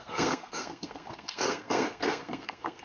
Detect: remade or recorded remade